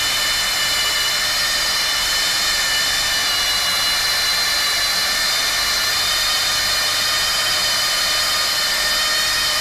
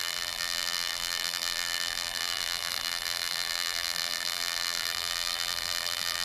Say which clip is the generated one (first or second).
second